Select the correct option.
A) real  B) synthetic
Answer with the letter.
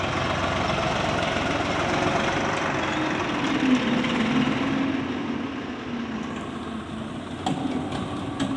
A